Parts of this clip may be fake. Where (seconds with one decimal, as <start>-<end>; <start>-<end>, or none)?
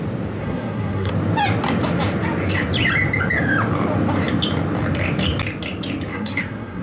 0.4-1.1; 6.1-6.8